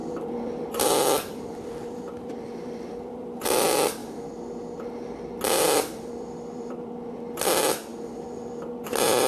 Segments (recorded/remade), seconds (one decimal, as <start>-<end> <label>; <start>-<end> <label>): 0.0-4.0 remade; 4.0-5.6 recorded; 5.6-7.9 remade; 7.9-8.6 recorded; 8.6-9.3 remade